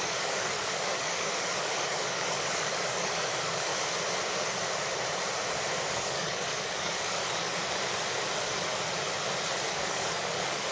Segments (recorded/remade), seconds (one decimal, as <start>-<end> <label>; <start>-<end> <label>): 0.0-3.7 remade; 3.7-5.9 recorded; 5.9-7.6 remade; 7.6-9.7 recorded; 9.7-10.7 remade

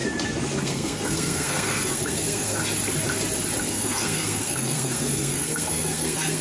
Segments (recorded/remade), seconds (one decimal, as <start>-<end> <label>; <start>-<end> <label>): 0.0-0.6 recorded; 0.6-2.6 remade; 2.6-3.6 recorded; 3.6-6.4 remade